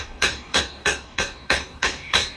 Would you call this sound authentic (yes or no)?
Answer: no